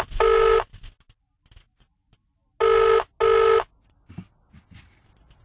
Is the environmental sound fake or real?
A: real